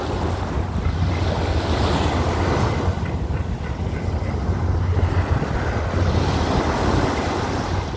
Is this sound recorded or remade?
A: recorded